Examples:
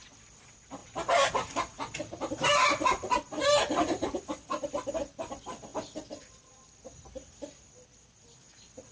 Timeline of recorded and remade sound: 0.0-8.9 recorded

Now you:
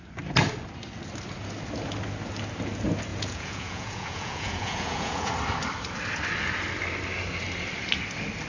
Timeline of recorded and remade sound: 0.0-3.1 recorded; 3.1-5.3 remade; 5.3-8.5 recorded